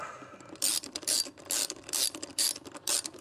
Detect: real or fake fake